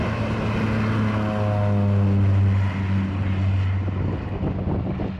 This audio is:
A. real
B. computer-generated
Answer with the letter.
A